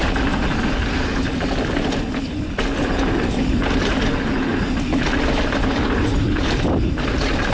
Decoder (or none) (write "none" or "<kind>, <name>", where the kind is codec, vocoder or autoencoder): none